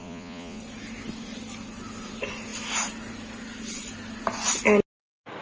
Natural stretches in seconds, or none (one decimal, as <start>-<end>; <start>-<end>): 0.6-5.4